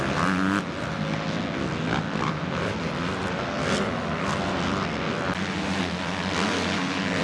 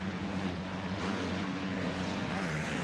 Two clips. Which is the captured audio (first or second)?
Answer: first